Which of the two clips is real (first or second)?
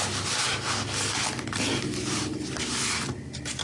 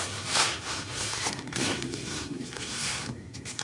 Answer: first